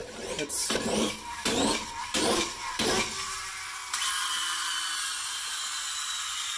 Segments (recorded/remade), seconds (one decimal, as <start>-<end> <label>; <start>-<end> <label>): 0.0-2.9 remade; 2.9-6.6 recorded